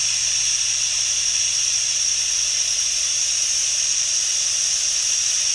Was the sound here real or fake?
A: real